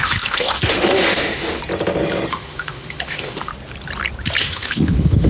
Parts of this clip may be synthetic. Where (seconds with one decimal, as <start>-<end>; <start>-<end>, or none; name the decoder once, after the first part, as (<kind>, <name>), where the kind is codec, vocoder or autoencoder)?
0.0-1.6 (autoencoder, DAC-VAE); 2.3-3.5; 4.4-5.3